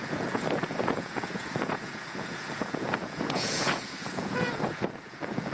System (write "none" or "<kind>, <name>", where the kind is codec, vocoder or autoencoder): vocoder, Vocos